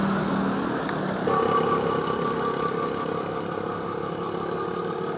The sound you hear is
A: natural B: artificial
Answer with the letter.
A